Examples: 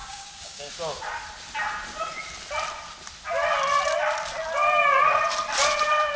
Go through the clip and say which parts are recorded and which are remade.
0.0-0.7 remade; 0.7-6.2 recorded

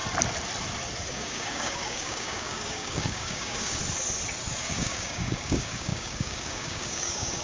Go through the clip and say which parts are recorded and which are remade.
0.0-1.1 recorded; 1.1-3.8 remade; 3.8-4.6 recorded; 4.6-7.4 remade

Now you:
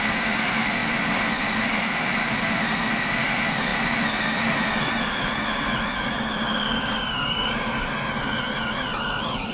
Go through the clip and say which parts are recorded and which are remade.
0.0-6.5 recorded; 6.5-7.7 remade; 7.7-9.5 recorded